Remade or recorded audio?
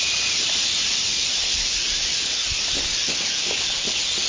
recorded